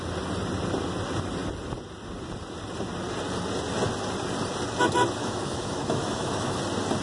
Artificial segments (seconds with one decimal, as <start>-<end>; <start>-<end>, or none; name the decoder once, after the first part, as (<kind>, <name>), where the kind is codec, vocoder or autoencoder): 5.2-6.6 (autoencoder, DAC-VAE)